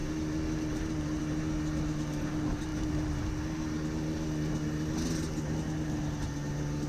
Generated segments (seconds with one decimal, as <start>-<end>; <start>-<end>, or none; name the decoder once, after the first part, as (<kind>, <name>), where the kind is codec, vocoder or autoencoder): none

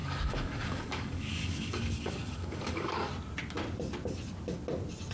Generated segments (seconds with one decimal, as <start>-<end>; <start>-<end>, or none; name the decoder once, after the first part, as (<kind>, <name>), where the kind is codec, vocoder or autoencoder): 0.0-3.1 (codec, DAC)

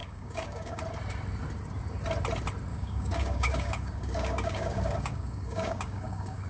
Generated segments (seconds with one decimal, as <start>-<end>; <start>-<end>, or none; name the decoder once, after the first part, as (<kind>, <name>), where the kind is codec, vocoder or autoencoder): 0.0-0.8 (codec, DAC); 2.7-6.5

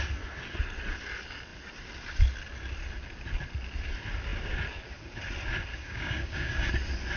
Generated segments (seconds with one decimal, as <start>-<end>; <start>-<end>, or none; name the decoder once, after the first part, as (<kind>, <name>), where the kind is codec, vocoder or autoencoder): 5.7-6.7 (codec, DAC)

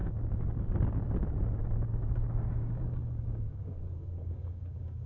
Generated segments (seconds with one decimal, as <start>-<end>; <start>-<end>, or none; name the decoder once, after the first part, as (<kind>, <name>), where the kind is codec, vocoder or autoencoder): 2.5-5.1 (codec, DAC)